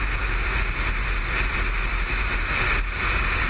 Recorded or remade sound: recorded